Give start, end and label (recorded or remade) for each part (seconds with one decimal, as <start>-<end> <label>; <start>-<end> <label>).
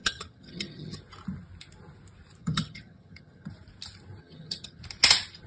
0.0-1.0 remade; 1.0-2.4 recorded; 2.4-3.5 remade; 3.5-4.2 recorded; 4.2-4.8 remade; 4.8-5.5 recorded